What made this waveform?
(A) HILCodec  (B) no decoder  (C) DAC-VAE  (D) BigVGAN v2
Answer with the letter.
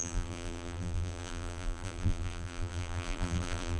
D